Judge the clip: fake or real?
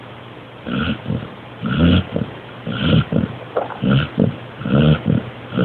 real